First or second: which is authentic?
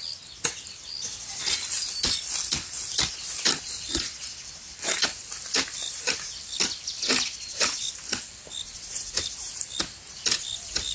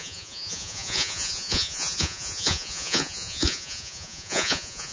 first